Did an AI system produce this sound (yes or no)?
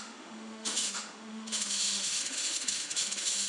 yes